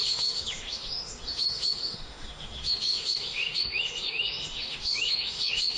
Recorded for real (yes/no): no